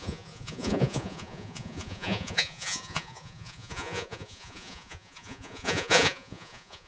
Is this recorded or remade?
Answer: remade